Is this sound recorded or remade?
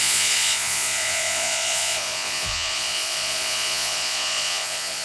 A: remade